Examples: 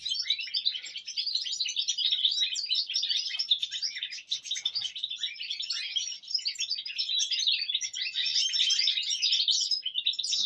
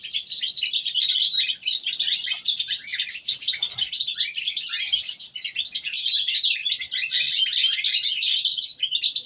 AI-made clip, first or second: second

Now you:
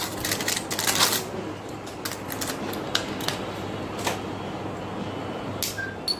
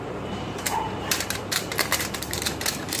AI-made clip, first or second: second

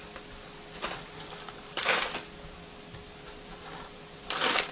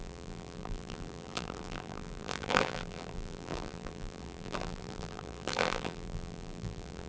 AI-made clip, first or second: second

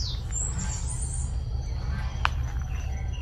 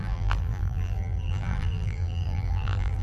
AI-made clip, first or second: second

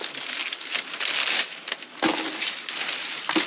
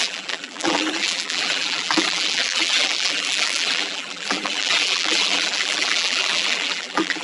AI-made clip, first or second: second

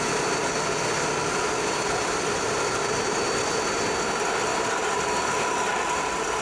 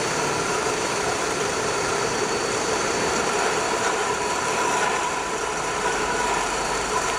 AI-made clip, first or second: second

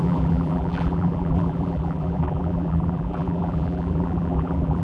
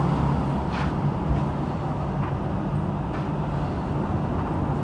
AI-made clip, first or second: first